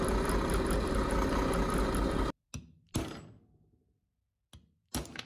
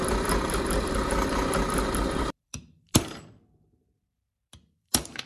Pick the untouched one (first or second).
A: first